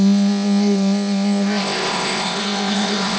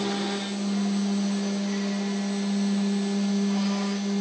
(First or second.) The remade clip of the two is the first